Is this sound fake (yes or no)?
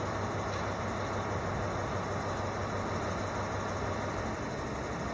no